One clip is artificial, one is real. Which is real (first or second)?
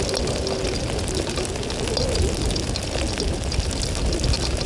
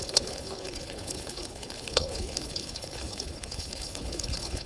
first